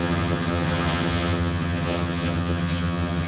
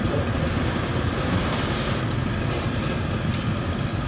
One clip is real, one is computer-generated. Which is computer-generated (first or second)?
first